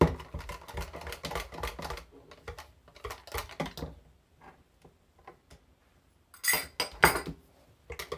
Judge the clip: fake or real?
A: real